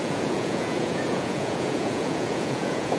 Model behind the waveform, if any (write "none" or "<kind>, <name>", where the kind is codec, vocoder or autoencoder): vocoder, Vocos